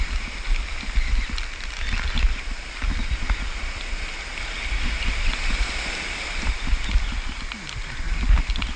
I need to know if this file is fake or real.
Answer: real